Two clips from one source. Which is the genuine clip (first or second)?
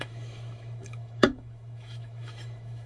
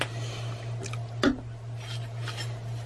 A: second